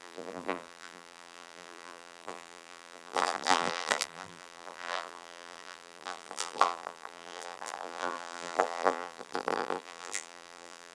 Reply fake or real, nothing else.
fake